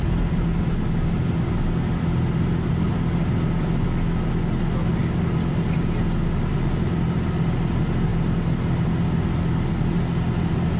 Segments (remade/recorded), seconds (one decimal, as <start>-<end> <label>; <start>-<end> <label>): 0.0-10.8 recorded